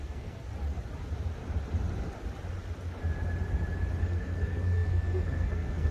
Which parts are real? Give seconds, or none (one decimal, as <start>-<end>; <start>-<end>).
0.5-4.0